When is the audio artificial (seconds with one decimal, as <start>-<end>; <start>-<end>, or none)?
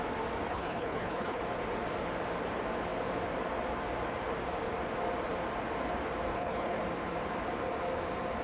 0.5-1.4; 6.3-6.8